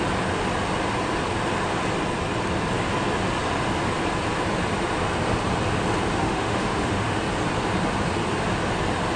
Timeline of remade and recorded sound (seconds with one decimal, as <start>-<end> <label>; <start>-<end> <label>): 0.0-6.2 recorded; 6.2-7.2 remade; 7.2-9.2 recorded